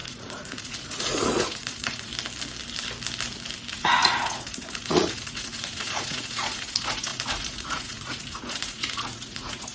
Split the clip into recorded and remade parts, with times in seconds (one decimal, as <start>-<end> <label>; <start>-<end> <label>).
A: 0.0-2.1 remade; 2.1-3.7 recorded; 3.7-9.7 remade